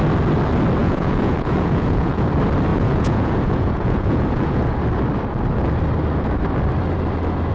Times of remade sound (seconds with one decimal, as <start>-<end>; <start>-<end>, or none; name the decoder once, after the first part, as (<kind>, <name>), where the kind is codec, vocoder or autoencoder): 0.8-2.3 (vocoder, Vocos); 2.7-4.8